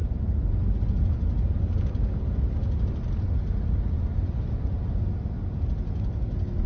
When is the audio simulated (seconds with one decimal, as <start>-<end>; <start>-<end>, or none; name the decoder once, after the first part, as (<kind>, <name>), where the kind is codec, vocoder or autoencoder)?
0.0-0.8 (vocoder, BigVGAN v2)